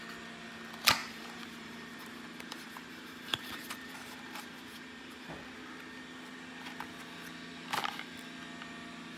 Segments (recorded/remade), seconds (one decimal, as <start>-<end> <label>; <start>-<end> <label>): 0.0-1.0 recorded; 1.0-5.3 remade; 5.3-9.2 recorded